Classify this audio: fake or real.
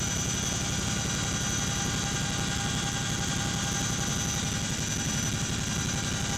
real